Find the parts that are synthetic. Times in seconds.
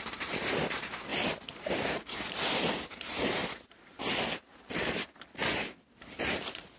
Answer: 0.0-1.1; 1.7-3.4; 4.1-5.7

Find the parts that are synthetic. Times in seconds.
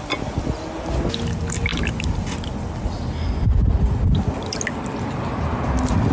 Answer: none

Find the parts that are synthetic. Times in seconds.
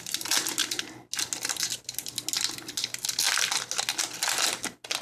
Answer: none